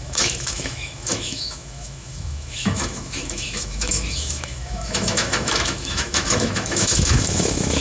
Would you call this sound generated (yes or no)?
yes